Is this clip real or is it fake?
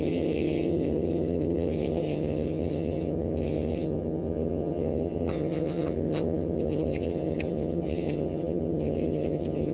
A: fake